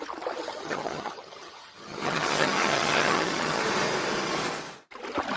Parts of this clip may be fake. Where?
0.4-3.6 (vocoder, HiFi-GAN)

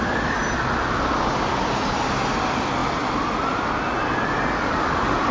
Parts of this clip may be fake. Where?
none

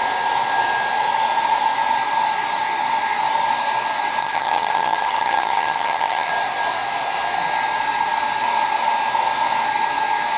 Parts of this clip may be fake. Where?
4.2-6.3 (vocoder, HiFi-GAN)

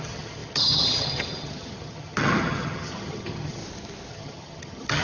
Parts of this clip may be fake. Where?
0.0-3.6 (vocoder, HiFi-GAN); 4.1-5.0

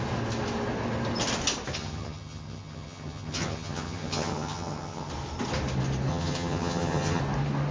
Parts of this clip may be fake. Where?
1.7-5.1 (vocoder, HiFi-GAN); 6.1-7.2

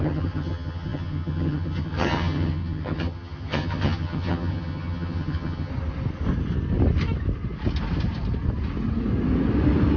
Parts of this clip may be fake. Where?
0.0-5.7 (vocoder, HiFi-GAN)

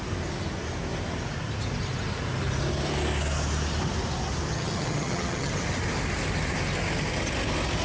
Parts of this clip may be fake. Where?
4.5-5.5 (vocoder, HiFi-GAN)

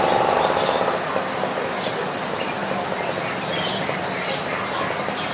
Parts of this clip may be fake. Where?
none